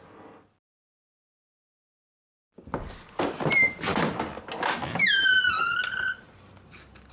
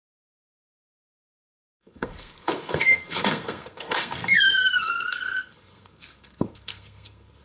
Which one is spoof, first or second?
second